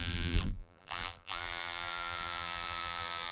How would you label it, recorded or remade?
remade